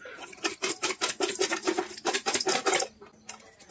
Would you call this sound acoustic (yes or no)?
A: yes